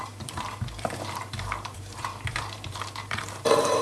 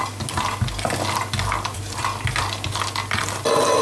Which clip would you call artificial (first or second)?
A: first